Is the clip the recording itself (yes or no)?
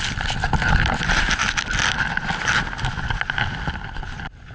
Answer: yes